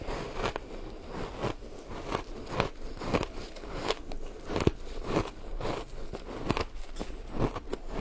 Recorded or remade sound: recorded